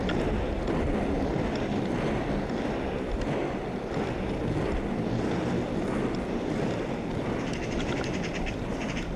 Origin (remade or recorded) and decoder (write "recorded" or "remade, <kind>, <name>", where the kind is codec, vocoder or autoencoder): recorded